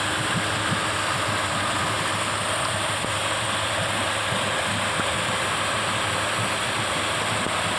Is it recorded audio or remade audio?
recorded